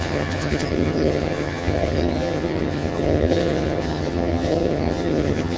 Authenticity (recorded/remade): remade